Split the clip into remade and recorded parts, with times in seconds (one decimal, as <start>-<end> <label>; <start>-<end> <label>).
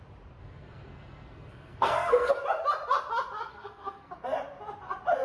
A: 0.0-0.4 recorded; 0.4-2.3 remade; 2.3-3.5 recorded; 3.5-4.1 remade; 4.1-5.2 recorded